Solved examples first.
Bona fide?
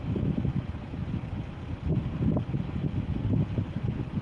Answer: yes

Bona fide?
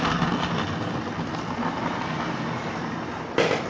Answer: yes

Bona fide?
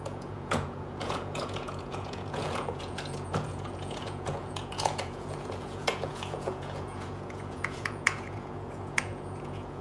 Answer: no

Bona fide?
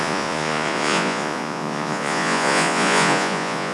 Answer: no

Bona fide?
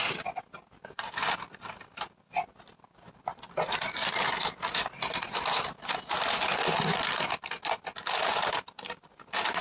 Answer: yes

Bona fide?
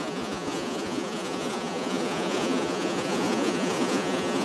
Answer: no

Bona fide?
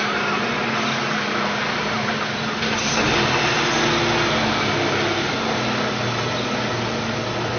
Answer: yes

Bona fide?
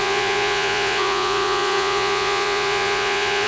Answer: no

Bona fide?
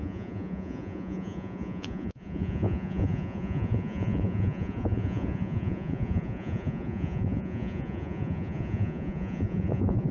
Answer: no